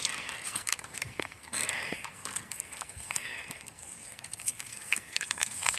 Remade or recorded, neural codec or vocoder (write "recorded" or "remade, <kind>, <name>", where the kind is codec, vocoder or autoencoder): remade, codec, SNAC